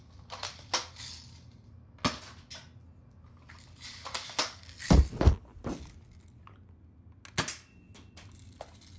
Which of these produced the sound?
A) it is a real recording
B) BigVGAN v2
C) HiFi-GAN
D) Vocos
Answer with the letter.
A